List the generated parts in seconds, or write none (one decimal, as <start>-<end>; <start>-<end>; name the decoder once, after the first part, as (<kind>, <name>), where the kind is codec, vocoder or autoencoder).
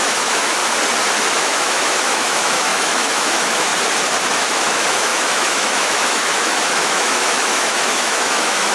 0.0-0.6 (autoencoder, DAC-VAE); 1.4-3.7; 4.3-8.7